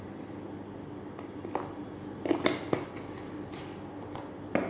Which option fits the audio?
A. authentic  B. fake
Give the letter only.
A